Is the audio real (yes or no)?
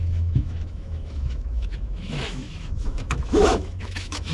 no